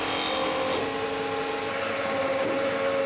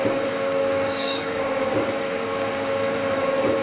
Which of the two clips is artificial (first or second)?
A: second